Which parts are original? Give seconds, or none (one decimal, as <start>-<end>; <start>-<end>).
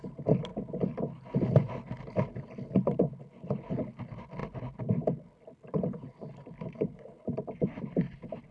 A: 0.0-8.5